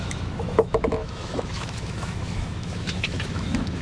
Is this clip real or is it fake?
fake